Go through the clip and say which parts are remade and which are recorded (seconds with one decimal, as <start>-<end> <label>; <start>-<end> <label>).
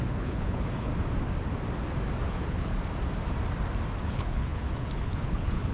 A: 0.0-0.9 remade; 0.9-2.3 recorded; 2.3-2.7 remade; 2.7-4.0 recorded; 4.0-5.7 remade